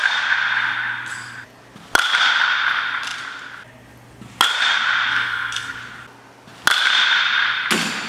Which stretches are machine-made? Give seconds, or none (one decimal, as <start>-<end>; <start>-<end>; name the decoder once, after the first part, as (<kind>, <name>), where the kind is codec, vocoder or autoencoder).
5.1-5.8 (codec, SNAC)